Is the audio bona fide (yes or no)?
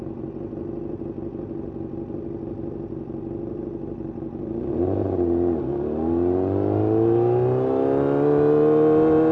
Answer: yes